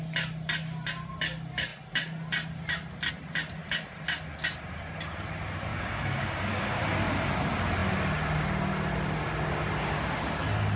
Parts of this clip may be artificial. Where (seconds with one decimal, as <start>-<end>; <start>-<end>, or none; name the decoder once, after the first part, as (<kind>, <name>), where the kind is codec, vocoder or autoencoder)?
5.7-6.8 (codec, DAC)